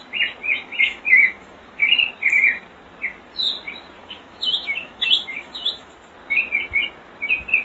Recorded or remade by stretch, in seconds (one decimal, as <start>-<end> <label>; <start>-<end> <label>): 0.0-0.5 recorded; 0.5-1.9 remade; 1.9-4.0 recorded; 4.0-5.9 remade; 5.9-7.6 recorded